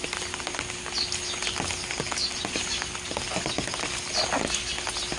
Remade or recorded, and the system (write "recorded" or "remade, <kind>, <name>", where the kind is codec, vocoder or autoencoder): recorded